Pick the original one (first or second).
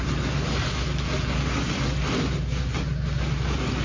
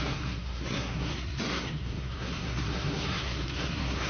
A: first